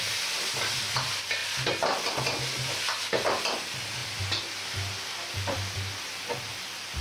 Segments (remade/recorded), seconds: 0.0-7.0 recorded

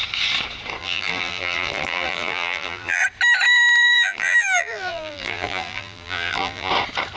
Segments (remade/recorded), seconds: 0.0-0.8 recorded; 0.8-3.0 remade; 3.0-3.9 recorded; 3.9-6.7 remade; 6.7-7.2 recorded

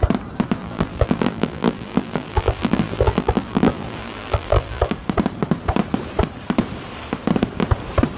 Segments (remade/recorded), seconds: 0.0-0.6 recorded; 0.6-4.8 remade; 4.8-8.2 recorded

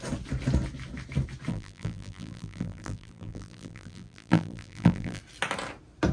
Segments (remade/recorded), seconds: 0.0-1.5 recorded; 1.5-5.2 remade; 5.2-6.1 recorded

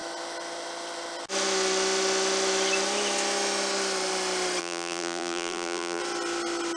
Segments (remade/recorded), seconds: 0.0-4.6 recorded; 4.6-6.0 remade; 6.0-6.8 recorded

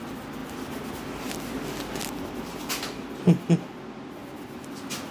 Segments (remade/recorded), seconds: 0.0-5.1 recorded

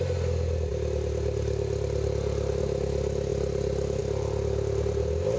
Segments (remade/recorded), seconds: 0.0-0.7 recorded; 0.7-2.6 remade; 2.6-5.4 recorded